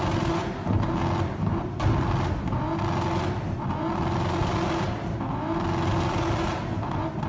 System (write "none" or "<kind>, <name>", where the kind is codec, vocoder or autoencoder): none